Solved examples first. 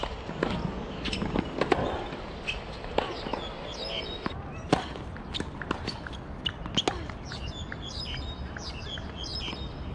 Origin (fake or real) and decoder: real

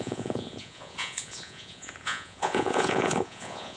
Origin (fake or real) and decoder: fake, vocoder, Vocos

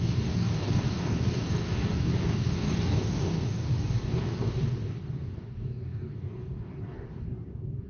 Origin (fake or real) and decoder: fake, codec, DAC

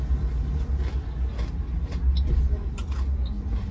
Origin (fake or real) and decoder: real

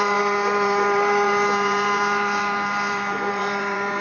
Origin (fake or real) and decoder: fake, vocoder, BigVGAN v2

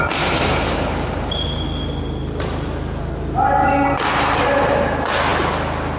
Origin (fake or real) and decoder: real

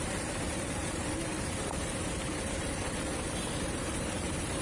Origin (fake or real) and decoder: fake, vocoder, BigVGAN v2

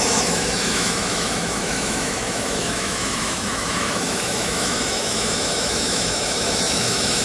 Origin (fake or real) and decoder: fake, autoencoder, DAC-VAE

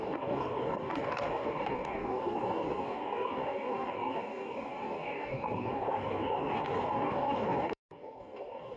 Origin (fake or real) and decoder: fake, codec, DAC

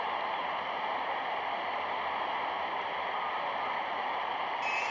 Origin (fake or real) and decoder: real